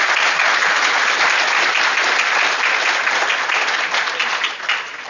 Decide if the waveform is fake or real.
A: real